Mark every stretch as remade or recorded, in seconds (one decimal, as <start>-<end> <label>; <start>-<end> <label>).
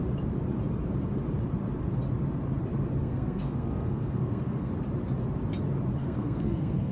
0.0-3.0 recorded; 3.0-4.7 remade; 4.7-6.0 recorded; 6.0-6.9 remade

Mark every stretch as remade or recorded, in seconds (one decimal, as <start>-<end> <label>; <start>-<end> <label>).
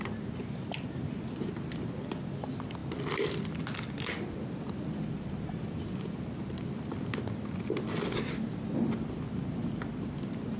0.0-10.6 recorded